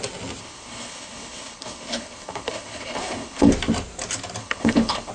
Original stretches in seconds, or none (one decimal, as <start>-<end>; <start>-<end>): 0.0-0.4; 3.5-4.4